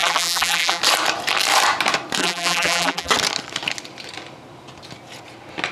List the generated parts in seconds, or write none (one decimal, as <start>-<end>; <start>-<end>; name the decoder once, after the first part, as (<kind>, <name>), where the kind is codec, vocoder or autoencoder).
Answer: 0.0-0.8 (vocoder, BigVGAN v2); 2.2-3.1